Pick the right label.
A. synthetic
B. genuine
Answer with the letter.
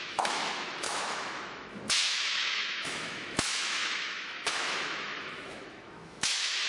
A